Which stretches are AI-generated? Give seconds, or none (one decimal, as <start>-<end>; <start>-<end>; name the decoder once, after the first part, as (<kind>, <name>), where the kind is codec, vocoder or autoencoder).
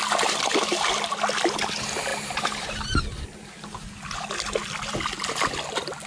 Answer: none